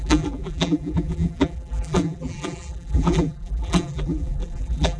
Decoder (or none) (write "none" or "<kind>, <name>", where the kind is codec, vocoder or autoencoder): vocoder, BigVGAN v2